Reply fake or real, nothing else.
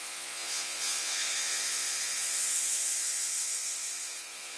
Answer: fake